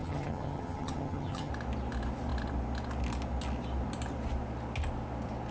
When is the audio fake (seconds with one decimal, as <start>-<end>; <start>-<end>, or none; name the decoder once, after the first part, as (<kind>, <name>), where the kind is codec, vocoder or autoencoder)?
0.0-1.5 (vocoder, HiFi-GAN)